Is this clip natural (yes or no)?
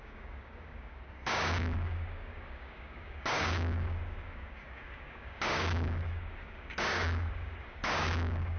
no